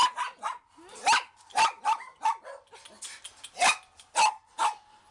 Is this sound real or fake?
real